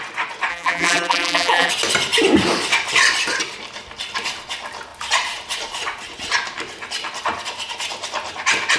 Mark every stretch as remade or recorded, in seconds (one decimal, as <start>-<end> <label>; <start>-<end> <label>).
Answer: 0.0-0.5 recorded; 0.5-1.7 remade; 1.7-8.8 recorded